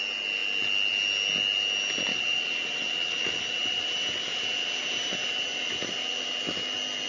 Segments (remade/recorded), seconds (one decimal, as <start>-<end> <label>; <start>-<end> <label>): 0.0-2.1 recorded; 2.1-6.4 remade; 6.4-7.1 recorded